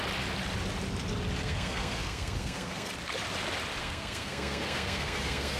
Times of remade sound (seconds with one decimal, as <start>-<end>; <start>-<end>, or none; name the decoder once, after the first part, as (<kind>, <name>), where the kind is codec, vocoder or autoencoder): 1.4-2.9 (codec, SNAC); 3.8-5.6